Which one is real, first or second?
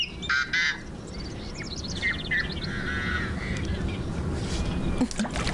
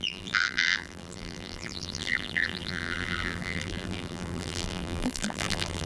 first